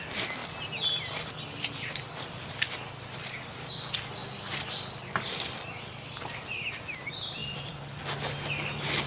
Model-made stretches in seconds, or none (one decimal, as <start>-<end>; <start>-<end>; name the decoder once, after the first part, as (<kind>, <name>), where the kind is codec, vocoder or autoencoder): 4.2-6.3 (vocoder, BigVGAN v2); 7.4-8.0